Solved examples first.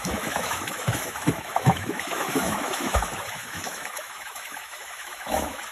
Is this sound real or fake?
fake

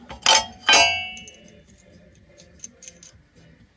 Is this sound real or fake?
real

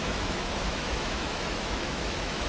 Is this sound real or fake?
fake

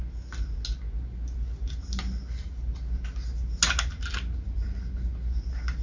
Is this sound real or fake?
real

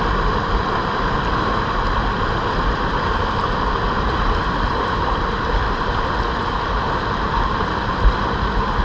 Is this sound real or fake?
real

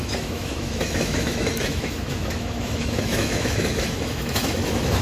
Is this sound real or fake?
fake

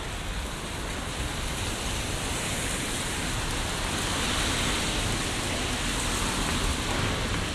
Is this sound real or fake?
real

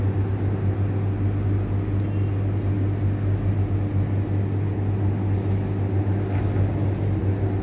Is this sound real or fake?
real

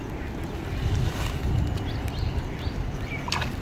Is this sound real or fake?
real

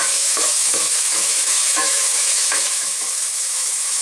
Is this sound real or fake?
fake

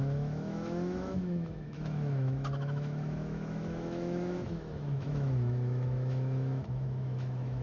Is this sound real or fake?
fake